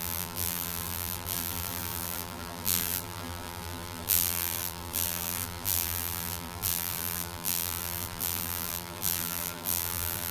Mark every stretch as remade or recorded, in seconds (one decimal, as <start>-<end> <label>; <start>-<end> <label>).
0.0-10.3 remade